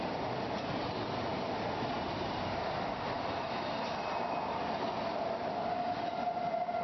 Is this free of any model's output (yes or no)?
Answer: yes